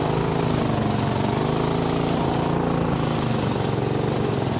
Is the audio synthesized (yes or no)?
no